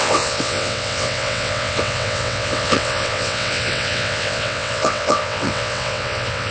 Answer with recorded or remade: remade